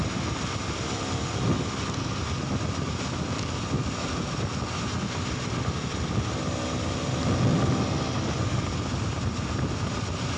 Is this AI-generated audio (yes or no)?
no